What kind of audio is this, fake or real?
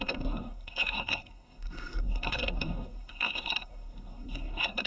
fake